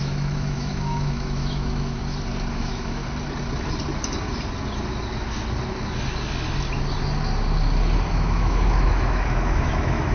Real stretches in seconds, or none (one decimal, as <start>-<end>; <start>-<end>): 2.0-2.5; 3.0-8.1